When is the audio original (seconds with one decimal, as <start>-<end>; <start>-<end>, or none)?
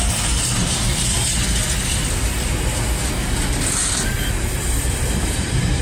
1.1-4.6